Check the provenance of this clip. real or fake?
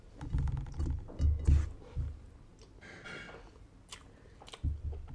real